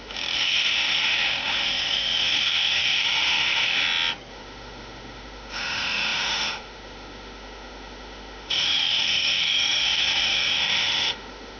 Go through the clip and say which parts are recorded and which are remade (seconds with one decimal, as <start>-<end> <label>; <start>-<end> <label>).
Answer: 0.0-3.8 remade; 3.8-4.3 recorded; 4.3-11.6 remade